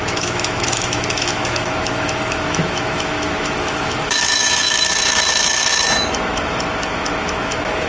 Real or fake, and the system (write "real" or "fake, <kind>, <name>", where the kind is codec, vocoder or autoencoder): fake, autoencoder, DAC-VAE